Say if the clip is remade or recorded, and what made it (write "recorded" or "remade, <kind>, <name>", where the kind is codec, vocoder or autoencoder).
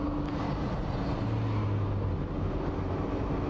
recorded